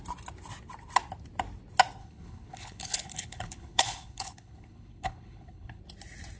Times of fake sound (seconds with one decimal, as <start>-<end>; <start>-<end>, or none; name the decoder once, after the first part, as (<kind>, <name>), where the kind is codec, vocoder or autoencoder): 2.0-5.8 (codec, HILCodec)